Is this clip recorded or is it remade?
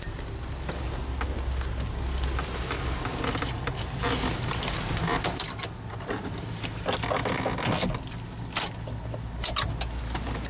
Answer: recorded